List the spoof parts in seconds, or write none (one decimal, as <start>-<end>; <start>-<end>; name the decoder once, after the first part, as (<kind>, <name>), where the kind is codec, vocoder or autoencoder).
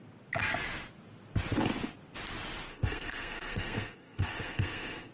2.7-5.1 (codec, SNAC)